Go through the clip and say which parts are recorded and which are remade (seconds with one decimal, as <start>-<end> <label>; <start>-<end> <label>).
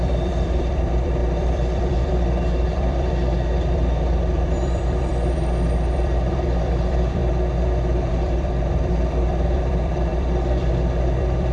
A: 0.0-7.2 remade; 7.2-8.1 recorded; 8.1-11.5 remade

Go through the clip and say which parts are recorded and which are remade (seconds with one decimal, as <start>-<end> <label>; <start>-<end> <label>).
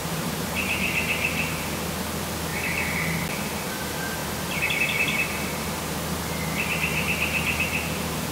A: 0.0-0.5 remade; 0.5-8.3 recorded